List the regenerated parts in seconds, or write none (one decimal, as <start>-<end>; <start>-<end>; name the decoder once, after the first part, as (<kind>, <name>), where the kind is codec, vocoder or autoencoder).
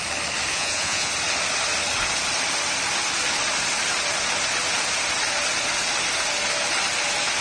0.5-1.1 (vocoder, Vocos)